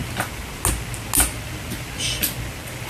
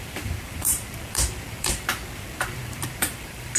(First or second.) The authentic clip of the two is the first